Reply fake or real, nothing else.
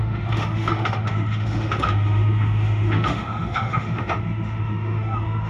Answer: fake